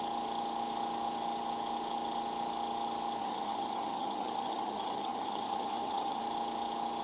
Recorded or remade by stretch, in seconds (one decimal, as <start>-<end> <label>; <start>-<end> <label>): 0.0-3.2 recorded; 3.2-6.2 remade; 6.2-7.0 recorded